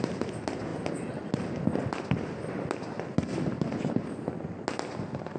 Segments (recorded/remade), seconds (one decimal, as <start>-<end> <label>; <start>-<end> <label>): 0.0-5.4 recorded